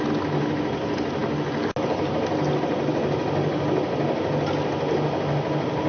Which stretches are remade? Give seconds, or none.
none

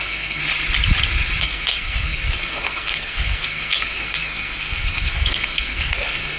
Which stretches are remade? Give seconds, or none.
0.0-0.4 (codec, SNAC); 1.4-6.4

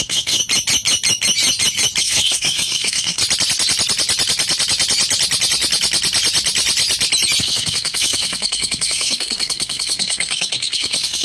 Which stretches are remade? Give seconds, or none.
0.0-0.4 (codec, SNAC); 2.0-3.2; 7.4-11.2

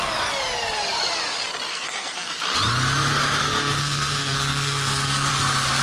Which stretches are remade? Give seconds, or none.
1.7-2.3 (codec, SNAC); 3.4-5.3

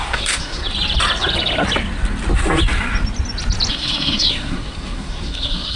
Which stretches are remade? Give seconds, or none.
0.0-0.6 (codec, SNAC); 3.7-5.8

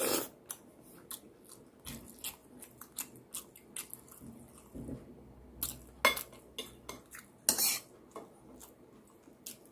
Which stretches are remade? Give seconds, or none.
none

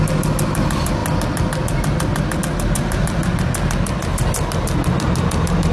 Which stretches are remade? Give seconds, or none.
none